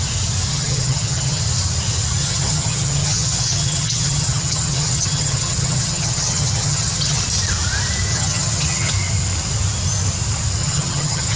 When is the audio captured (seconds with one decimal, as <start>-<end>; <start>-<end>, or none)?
0.0-0.5; 1.4-2.2; 7.2-8.1; 8.9-10.6